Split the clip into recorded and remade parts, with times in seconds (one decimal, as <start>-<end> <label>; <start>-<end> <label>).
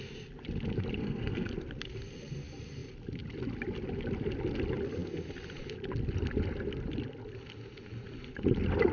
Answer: 0.0-1.0 recorded; 1.0-1.5 remade; 1.5-8.9 recorded